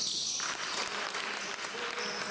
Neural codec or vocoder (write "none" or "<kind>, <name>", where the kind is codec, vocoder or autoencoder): none